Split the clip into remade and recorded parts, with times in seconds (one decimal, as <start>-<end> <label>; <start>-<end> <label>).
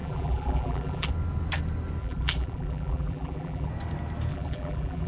0.0-1.1 remade; 1.1-2.0 recorded; 2.0-3.7 remade; 3.7-4.3 recorded; 4.3-5.1 remade